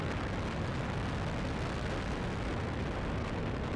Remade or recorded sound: recorded